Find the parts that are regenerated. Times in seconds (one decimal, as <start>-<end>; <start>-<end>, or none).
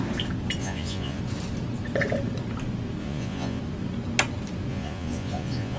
0.6-1.2; 3.0-3.6; 4.7-5.8